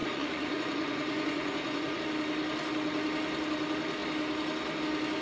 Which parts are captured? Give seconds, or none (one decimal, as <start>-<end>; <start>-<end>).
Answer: 2.0-5.2